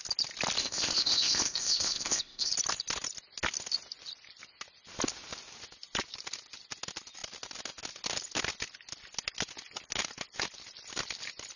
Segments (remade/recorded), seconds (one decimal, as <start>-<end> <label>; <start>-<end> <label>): 0.0-0.6 recorded; 0.6-2.5 remade; 2.5-11.6 recorded